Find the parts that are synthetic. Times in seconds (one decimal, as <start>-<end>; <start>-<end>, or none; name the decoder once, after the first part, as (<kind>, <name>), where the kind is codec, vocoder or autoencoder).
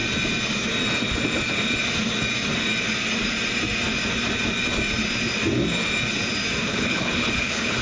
6.7-7.8 (codec, HILCodec)